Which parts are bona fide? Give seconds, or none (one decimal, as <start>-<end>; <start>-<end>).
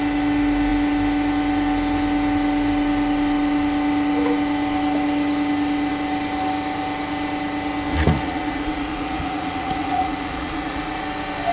0.0-7.9; 11.0-11.5